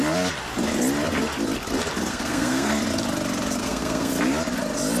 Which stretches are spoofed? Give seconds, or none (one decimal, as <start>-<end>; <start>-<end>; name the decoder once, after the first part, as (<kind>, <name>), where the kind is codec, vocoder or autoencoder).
2.1-2.7 (codec, SNAC); 3.6-4.1